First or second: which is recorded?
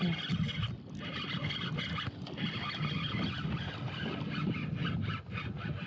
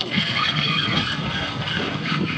first